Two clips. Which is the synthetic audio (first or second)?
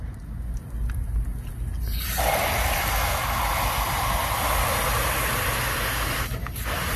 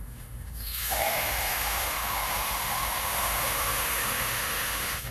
second